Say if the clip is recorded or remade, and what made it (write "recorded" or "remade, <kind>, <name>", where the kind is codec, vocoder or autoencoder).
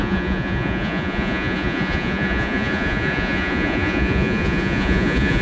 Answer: remade, vocoder, Vocos